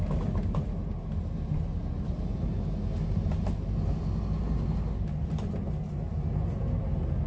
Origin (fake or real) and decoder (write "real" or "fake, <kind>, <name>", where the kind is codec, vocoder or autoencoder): real